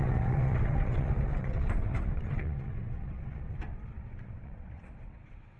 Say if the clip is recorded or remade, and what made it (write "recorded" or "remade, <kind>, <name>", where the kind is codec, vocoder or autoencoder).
remade, vocoder, WaveNeXt